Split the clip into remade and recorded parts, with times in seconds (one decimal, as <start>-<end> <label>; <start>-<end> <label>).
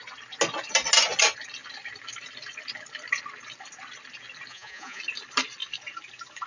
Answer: 0.0-4.5 recorded; 4.5-5.0 remade; 5.0-6.5 recorded